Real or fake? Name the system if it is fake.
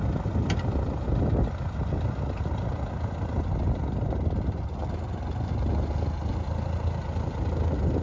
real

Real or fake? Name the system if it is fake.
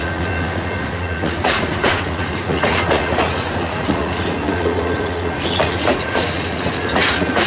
fake, vocoder, Vocos